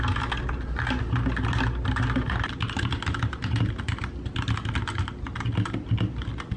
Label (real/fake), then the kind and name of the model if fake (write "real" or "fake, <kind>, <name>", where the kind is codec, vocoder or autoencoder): real